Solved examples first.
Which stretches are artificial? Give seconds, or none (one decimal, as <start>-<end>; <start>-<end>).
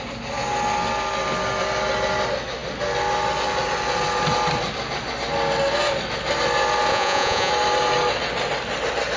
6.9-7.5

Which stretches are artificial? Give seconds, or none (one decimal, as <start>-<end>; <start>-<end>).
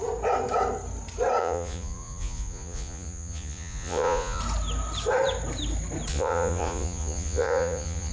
1.4-4.4; 6.1-8.1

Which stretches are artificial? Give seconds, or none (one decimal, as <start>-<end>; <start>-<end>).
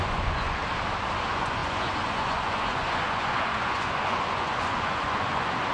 0.0-0.6; 1.2-5.7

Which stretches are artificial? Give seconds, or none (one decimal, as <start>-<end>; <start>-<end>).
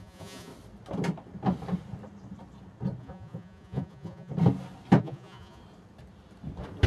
0.0-0.5; 3.0-4.3; 5.0-5.6